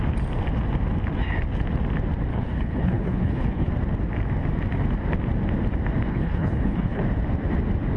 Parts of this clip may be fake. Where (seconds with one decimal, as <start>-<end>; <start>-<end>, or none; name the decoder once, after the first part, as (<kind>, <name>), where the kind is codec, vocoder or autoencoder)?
2.3-3.7 (codec, HILCodec); 6.1-7.0